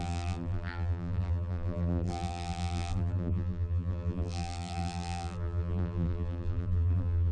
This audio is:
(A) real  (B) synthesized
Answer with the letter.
B